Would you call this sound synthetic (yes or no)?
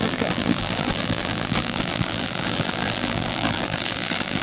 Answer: yes